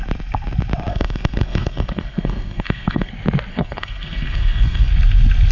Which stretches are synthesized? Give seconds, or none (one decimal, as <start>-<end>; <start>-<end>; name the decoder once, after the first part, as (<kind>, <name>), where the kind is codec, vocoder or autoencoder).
0.9-3.1 (codec, SNAC); 3.5-4.9